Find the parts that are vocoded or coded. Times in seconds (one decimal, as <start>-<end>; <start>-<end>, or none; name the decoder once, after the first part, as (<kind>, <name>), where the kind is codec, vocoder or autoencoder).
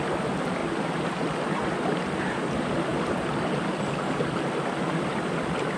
none